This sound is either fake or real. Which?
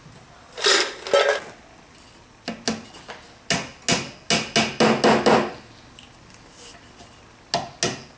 real